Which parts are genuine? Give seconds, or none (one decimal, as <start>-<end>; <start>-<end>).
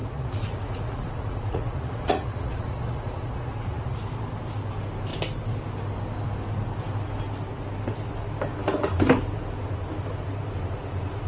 4.0-11.3